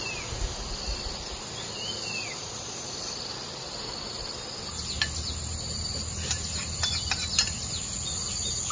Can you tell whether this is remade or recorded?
recorded